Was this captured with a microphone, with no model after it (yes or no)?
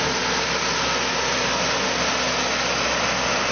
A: yes